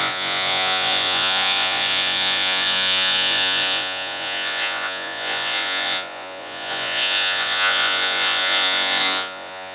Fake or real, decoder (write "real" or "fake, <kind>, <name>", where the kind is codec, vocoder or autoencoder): fake, vocoder, Vocos